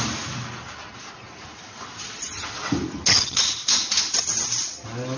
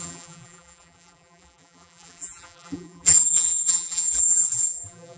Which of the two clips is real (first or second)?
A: first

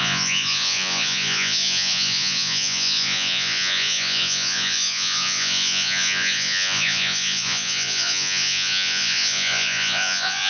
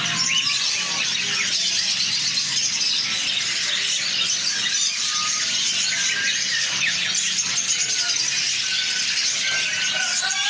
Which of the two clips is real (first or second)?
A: second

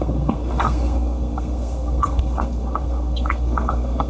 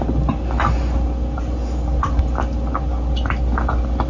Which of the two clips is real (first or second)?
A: second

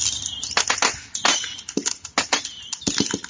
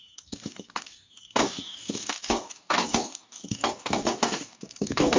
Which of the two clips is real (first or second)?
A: first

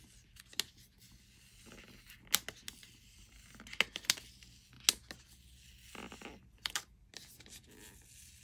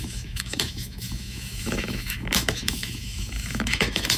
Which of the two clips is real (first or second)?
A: first